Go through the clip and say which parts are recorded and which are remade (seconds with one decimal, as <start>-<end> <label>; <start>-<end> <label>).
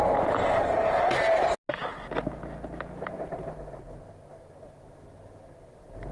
0.0-6.1 recorded